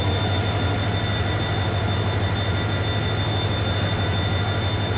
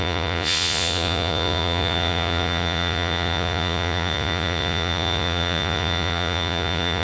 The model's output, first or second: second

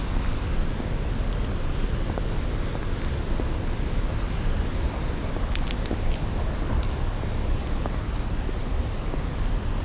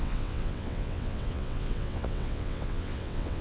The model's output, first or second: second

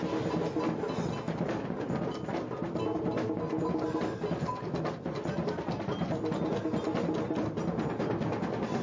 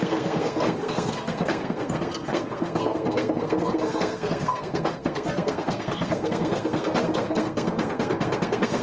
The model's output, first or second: second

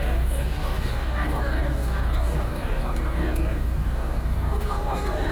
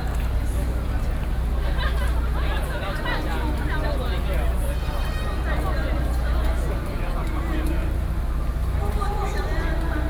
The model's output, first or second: first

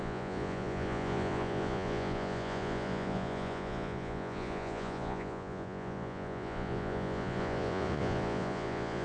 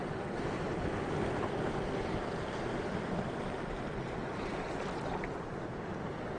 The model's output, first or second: first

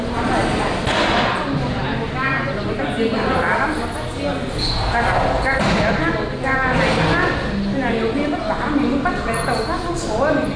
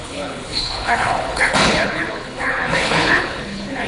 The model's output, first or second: second